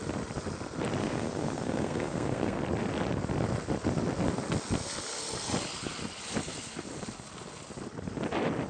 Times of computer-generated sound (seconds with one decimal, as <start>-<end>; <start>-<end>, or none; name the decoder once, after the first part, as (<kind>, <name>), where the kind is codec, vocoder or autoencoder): 1.0-2.6 (codec, SNAC)